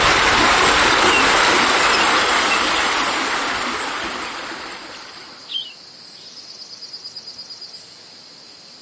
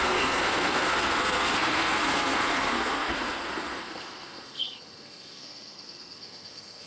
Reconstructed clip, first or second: second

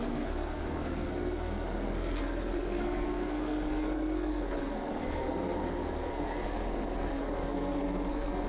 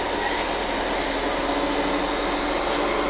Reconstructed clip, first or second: first